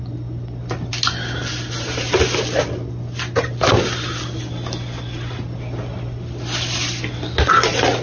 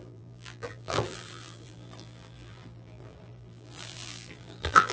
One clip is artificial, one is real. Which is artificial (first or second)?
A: second